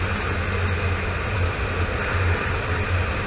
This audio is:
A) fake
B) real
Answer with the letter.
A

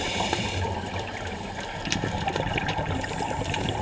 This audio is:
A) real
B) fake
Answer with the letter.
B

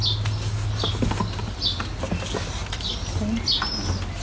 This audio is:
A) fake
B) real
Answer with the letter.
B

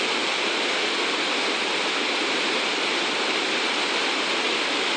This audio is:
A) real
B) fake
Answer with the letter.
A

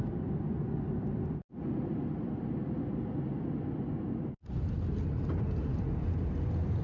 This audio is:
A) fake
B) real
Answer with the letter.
B